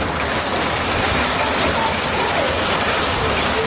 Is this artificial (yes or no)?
no